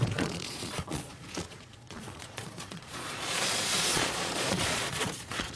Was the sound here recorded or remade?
remade